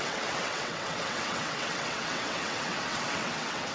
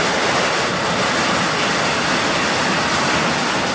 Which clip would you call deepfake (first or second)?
first